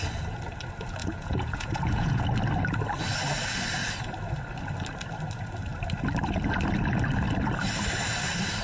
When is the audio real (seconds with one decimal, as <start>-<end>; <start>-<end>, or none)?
0.0-1.0; 2.2-8.6